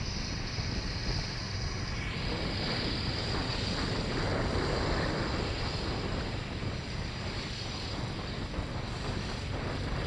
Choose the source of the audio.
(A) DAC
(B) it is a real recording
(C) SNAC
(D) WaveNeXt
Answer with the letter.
B